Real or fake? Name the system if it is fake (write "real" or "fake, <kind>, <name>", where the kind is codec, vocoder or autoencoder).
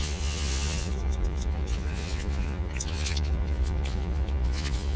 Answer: fake, vocoder, Vocos